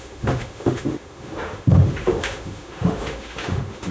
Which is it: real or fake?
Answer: fake